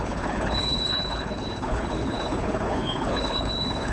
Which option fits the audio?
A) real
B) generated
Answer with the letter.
B